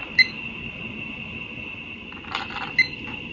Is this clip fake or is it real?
real